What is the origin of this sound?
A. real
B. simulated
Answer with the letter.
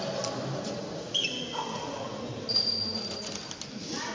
A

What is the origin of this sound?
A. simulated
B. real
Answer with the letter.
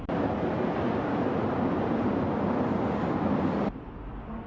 B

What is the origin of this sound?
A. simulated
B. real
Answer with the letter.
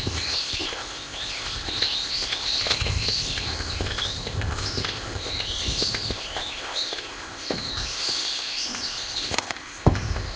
A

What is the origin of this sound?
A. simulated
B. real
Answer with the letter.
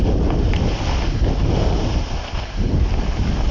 B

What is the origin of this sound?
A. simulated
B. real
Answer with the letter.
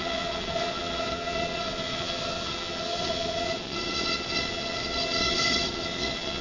A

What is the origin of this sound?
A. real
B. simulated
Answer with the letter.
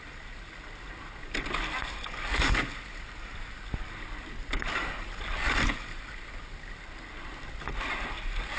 A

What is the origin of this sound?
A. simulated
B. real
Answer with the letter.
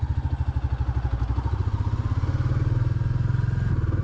B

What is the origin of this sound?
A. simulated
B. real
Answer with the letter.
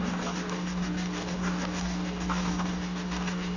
A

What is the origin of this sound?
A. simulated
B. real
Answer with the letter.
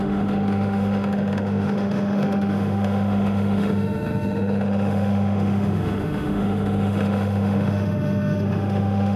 A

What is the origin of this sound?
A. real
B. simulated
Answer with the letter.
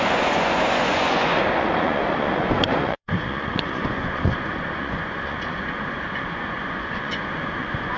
B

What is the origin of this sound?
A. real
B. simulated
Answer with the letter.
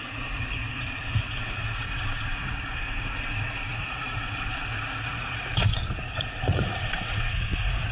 B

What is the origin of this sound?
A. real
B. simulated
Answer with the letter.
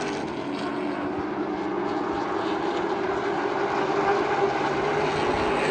A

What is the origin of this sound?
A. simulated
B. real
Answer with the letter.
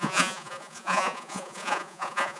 A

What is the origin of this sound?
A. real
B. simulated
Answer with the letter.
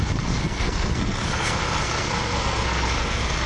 B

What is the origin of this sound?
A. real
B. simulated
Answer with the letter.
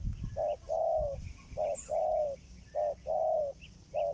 A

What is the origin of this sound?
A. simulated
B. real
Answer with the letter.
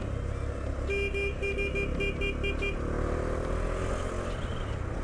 B